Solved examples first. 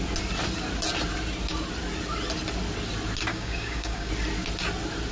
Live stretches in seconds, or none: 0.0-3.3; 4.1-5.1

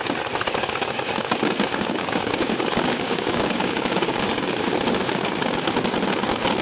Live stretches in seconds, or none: 0.0-0.6; 4.6-6.6

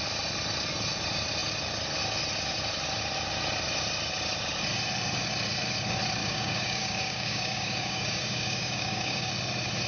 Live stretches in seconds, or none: 0.0-6.2; 9.3-9.9